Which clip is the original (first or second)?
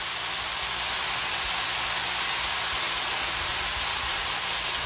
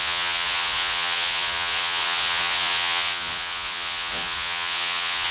first